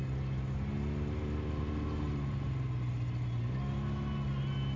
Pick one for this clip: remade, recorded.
recorded